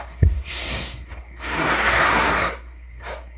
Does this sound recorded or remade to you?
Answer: remade